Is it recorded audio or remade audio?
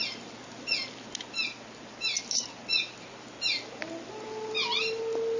recorded